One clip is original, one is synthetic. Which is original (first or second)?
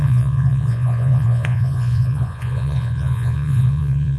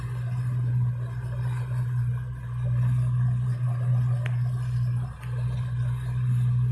second